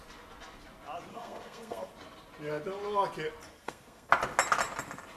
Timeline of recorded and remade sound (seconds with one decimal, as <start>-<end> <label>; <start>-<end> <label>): 0.0-1.1 recorded; 1.1-1.9 remade; 1.9-3.5 recorded; 3.5-4.1 remade; 4.1-5.2 recorded